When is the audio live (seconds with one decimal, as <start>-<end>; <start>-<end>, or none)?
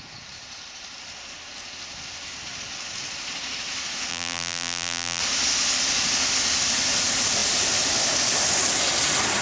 0.0-4.1; 5.2-9.4